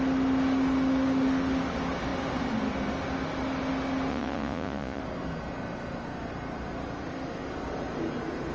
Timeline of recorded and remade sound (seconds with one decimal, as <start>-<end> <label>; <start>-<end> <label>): 0.0-4.1 recorded; 4.1-5.0 remade; 5.0-8.5 recorded